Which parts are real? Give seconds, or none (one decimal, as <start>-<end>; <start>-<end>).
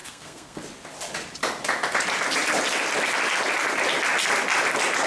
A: 0.6-5.1